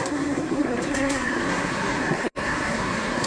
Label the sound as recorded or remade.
remade